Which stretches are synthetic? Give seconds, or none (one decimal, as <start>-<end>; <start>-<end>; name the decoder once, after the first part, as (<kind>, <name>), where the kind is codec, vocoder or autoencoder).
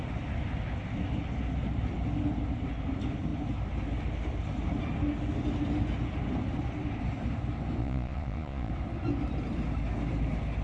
7.8-8.7 (vocoder, Vocos)